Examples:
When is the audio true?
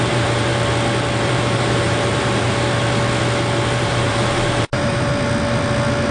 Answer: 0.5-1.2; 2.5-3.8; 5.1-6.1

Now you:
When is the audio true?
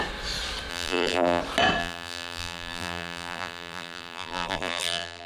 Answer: 0.0-0.7; 1.4-1.8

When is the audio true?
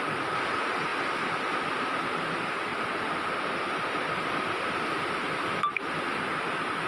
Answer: 0.0-6.9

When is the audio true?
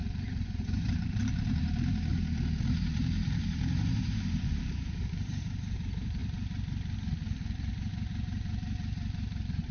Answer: 2.1-2.6; 6.2-7.9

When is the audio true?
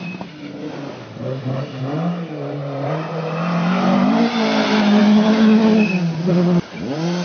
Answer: 0.4-1.2; 5.0-6.3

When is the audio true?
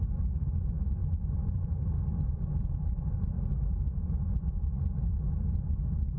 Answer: 0.0-6.2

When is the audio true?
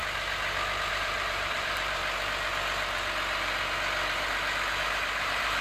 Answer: 0.0-0.9; 2.0-4.8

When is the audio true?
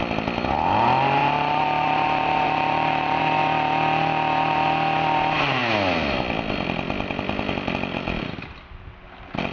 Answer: 0.0-1.2; 3.2-9.5